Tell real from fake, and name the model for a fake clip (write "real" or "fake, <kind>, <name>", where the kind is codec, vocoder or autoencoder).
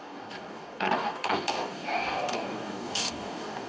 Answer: fake, codec, DAC